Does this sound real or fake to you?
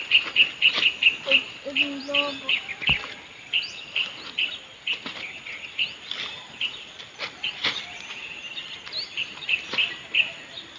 real